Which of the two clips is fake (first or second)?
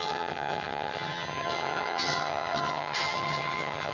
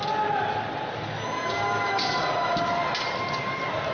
first